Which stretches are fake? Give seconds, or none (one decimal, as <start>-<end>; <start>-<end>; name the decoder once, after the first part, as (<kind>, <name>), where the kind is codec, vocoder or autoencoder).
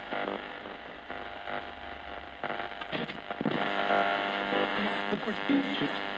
0.0-4.1 (vocoder, BigVGAN v2); 4.7-6.2